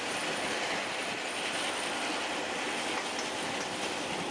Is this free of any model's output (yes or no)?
yes